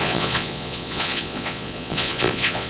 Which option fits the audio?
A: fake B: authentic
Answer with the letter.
A